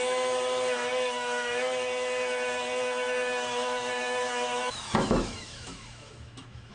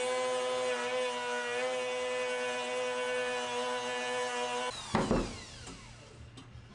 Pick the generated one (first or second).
first